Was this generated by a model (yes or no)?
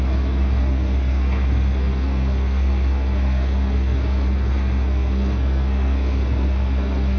yes